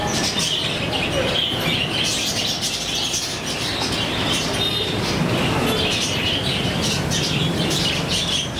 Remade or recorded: recorded